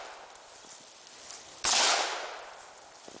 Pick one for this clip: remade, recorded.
recorded